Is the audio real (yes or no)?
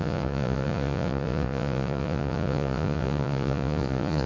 no